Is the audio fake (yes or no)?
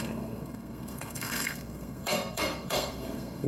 yes